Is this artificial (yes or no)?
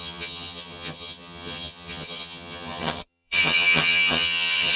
yes